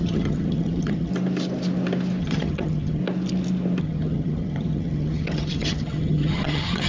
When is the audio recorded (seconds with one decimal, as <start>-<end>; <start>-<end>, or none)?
1.1-2.2; 3.0-3.8